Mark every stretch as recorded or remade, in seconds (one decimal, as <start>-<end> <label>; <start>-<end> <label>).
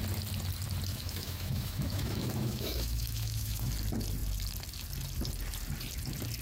0.0-0.9 recorded; 0.9-3.7 remade; 3.7-6.4 recorded